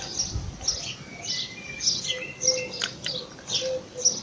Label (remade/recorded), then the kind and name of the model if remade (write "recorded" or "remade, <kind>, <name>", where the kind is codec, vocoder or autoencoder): recorded